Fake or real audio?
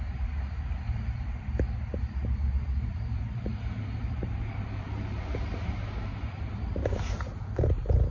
fake